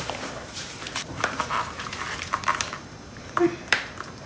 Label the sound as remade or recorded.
remade